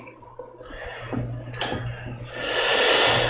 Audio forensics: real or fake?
real